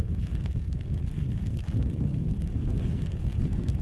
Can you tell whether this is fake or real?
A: fake